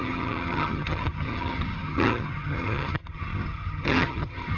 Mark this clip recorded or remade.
remade